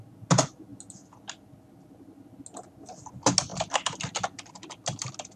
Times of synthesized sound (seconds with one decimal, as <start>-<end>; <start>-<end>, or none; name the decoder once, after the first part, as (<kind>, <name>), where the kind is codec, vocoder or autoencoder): 3.5-4.5 (vocoder, BigVGAN v2)